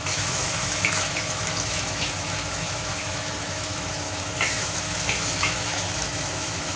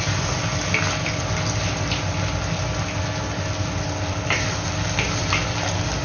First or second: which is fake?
first